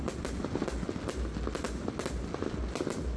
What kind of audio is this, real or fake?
real